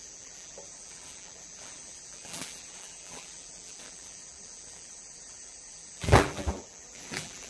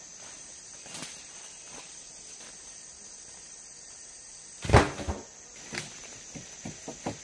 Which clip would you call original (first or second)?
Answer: second